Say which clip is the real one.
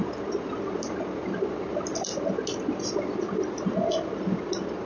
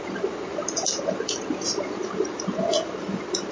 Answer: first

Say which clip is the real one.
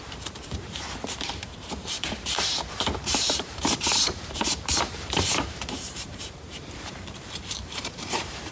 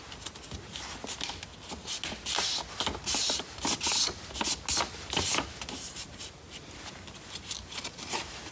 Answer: second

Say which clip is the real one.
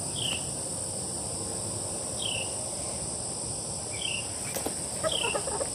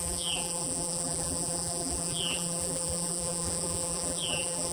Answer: first